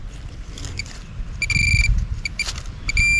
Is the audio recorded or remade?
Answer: recorded